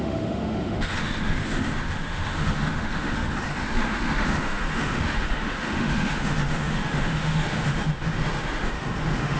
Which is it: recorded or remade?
remade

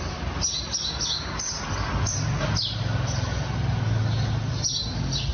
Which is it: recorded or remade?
recorded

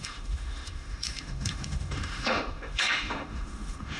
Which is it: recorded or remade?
remade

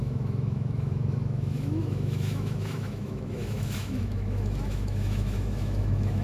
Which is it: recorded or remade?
remade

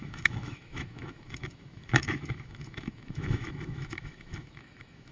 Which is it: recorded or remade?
remade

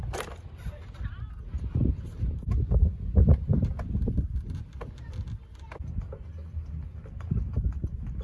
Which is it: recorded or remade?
recorded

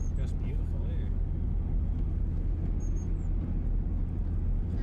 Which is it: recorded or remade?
recorded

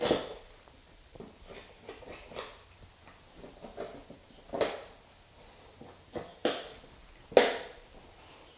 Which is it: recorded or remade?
recorded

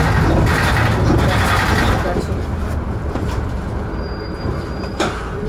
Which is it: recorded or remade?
recorded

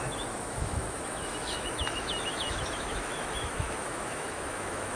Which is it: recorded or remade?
remade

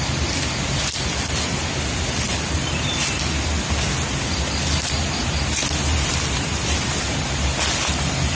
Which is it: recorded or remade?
recorded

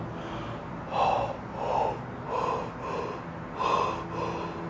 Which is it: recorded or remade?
recorded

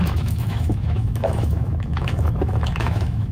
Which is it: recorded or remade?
remade